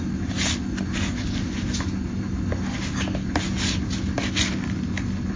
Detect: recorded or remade recorded